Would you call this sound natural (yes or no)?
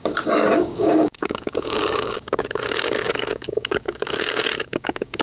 no